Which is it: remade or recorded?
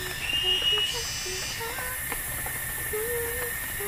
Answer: recorded